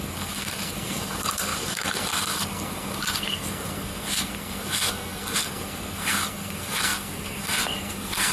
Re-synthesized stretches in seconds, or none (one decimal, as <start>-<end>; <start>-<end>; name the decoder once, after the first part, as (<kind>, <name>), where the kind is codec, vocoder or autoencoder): 0.0-8.3 (codec, SNAC)